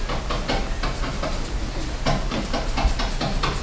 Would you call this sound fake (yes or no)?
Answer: no